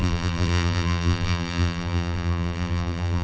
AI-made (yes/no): yes